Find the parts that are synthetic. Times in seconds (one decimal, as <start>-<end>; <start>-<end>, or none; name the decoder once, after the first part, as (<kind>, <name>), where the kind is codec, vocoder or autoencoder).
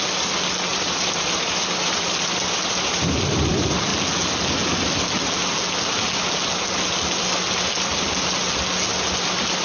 0.7-3.4 (vocoder, BigVGAN v2)